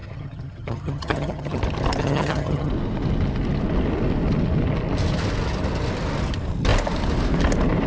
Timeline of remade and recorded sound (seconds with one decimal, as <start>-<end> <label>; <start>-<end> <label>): 0.0-1.6 remade; 1.6-2.0 recorded; 2.0-2.7 remade; 2.7-7.9 recorded